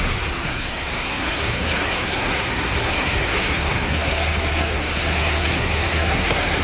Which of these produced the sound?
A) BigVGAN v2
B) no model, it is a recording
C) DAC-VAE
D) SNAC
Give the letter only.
D